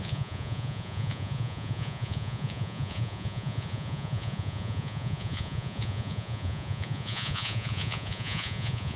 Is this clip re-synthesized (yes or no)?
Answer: yes